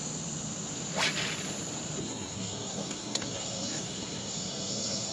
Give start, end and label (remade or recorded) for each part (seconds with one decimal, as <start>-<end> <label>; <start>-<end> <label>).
0.0-2.0 recorded; 2.0-5.1 remade